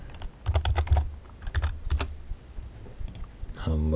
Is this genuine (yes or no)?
no